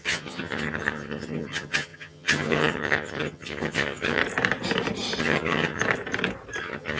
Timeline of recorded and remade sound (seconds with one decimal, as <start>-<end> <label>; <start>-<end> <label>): 0.0-4.2 remade; 4.2-5.2 recorded; 5.2-5.8 remade; 5.8-6.6 recorded; 6.6-7.0 remade